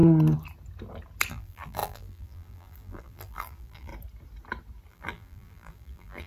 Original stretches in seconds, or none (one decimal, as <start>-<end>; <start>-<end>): 0.0-1.3; 3.9-4.9